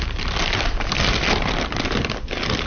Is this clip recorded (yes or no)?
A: yes